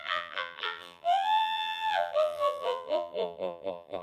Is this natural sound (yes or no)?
no